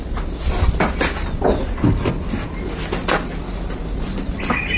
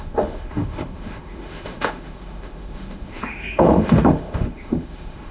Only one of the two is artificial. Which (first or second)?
second